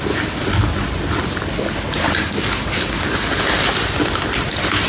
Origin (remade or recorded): recorded